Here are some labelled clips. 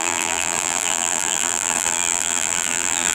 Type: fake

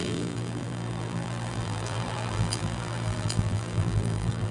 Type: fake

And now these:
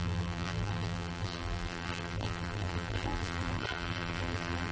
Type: fake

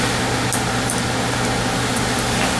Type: real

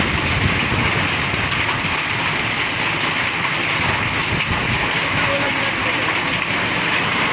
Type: real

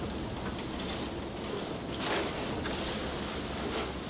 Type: real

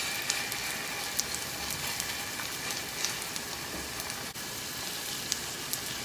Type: real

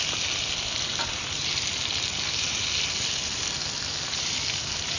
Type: real